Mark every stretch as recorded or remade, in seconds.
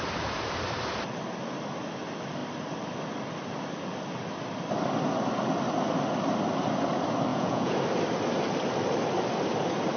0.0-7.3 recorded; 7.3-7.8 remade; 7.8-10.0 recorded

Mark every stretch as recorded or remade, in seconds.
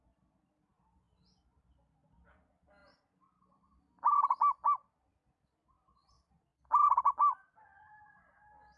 0.0-8.8 recorded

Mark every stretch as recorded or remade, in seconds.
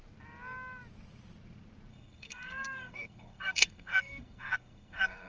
0.0-1.9 recorded; 1.9-5.3 remade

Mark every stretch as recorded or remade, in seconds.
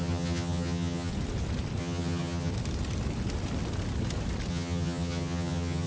0.0-1.1 remade; 1.1-1.8 recorded; 1.8-2.5 remade; 2.5-4.5 recorded; 4.5-5.9 remade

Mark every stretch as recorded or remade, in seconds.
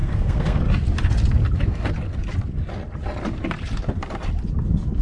0.0-0.6 remade; 0.6-5.0 recorded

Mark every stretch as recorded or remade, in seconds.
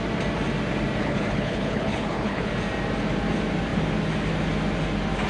0.0-1.0 recorded; 1.0-2.5 remade; 2.5-5.3 recorded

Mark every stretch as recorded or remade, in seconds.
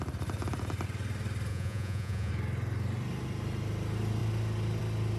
0.0-1.5 recorded; 1.5-2.3 remade; 2.3-5.2 recorded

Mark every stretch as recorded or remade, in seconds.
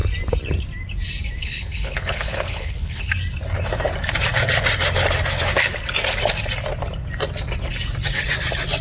0.0-1.4 recorded; 1.4-3.1 remade; 3.1-8.8 recorded